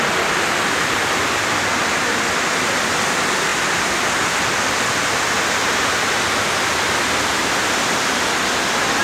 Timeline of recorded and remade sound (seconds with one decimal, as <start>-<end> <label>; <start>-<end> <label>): 0.0-9.0 recorded